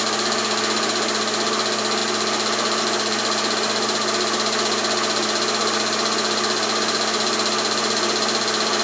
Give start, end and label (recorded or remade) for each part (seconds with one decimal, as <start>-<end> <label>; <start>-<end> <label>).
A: 0.0-8.8 recorded